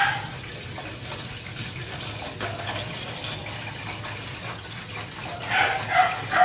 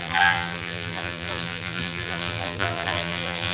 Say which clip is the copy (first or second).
second